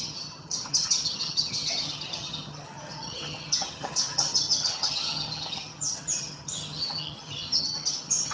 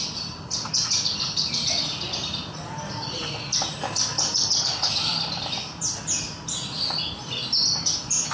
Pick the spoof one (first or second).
first